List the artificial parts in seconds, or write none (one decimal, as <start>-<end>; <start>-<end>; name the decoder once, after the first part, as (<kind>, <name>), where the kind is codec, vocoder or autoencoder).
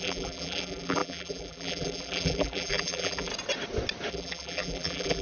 0.0-3.3 (vocoder, BigVGAN v2); 4.1-5.2